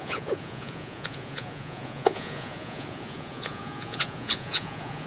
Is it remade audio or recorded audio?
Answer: remade